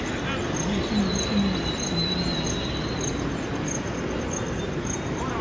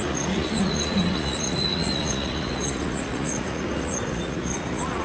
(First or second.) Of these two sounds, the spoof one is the second